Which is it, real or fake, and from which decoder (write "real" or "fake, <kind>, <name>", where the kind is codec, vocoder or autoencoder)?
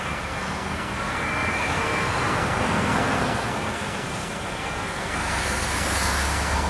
fake, codec, SNAC